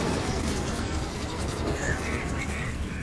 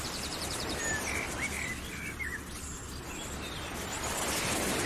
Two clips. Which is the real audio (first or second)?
second